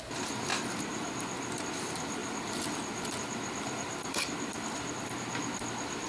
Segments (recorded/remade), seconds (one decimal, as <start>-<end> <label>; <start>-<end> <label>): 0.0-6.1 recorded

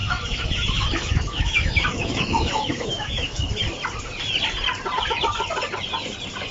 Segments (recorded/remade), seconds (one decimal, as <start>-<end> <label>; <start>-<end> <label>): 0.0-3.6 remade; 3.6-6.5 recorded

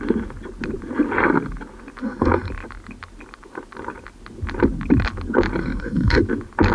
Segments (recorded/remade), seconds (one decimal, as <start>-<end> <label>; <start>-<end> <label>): 0.0-2.0 recorded; 2.0-2.5 remade; 2.5-5.6 recorded; 5.6-6.2 remade; 6.2-6.7 recorded